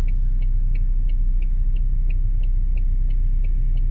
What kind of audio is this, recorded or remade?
recorded